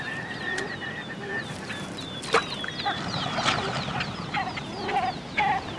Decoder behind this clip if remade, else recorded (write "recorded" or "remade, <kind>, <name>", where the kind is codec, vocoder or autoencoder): recorded